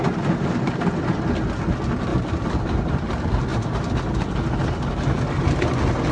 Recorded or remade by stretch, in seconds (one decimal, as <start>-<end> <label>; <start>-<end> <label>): 0.0-6.1 recorded